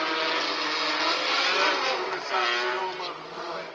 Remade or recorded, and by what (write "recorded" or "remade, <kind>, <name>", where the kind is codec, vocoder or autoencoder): recorded